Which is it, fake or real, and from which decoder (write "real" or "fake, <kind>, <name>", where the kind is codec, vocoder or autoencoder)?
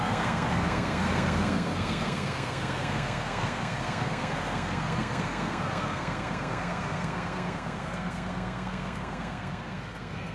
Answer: fake, codec, SNAC